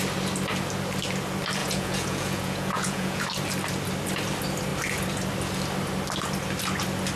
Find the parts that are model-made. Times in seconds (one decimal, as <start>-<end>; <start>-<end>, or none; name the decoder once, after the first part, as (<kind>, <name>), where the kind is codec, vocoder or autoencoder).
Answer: 1.6-3.2 (vocoder, Vocos)